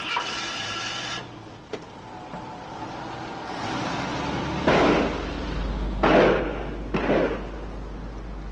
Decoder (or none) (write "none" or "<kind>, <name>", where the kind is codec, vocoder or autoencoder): none